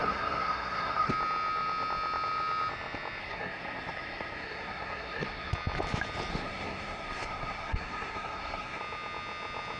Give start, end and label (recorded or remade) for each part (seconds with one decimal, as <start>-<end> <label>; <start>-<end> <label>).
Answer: 0.0-1.1 remade; 1.1-3.2 recorded; 3.2-5.5 remade; 5.5-6.3 recorded; 6.3-8.8 remade; 8.8-9.8 recorded